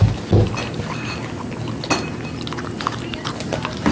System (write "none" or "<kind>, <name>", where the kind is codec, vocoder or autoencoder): none